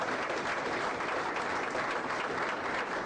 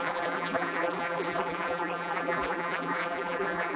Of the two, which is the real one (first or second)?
first